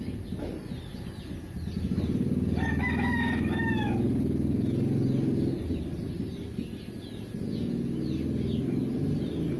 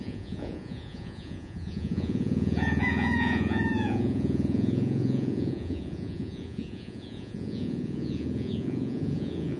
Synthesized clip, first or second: second